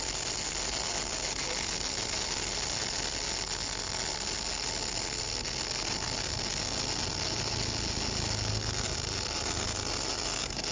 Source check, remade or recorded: recorded